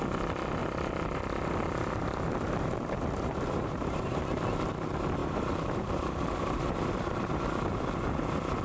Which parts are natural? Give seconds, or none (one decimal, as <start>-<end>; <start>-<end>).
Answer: 0.0-0.6; 4.2-5.2; 7.3-8.6